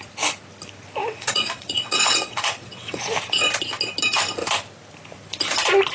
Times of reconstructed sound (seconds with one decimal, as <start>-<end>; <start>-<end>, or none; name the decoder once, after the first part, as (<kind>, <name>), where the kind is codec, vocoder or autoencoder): 1.0-3.0 (vocoder, WaveNeXt)